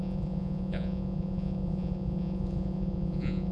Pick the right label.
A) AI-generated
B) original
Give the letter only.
A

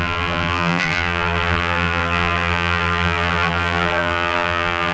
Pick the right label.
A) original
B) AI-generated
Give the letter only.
B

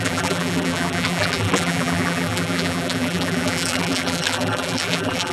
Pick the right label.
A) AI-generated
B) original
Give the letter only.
A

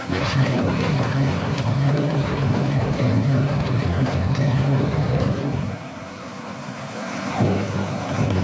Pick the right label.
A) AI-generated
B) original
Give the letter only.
A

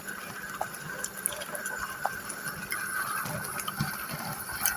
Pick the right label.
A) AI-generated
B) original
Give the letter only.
B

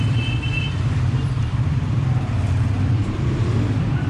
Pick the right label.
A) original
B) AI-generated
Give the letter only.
B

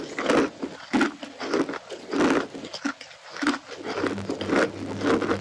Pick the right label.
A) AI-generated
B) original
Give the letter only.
B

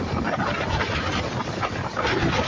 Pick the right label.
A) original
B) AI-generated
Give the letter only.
A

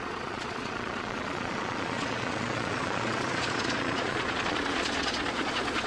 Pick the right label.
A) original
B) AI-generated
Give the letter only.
B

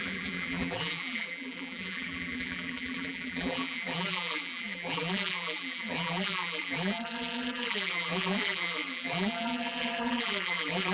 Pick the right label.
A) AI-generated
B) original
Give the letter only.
A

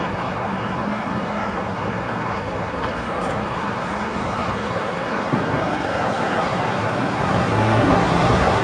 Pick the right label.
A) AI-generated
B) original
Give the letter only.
A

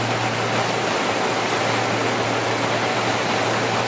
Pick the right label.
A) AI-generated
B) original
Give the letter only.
B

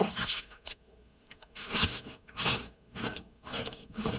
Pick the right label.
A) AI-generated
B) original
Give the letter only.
A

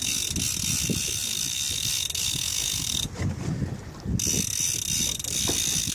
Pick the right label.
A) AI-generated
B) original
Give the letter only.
B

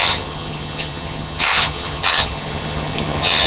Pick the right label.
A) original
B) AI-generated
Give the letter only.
B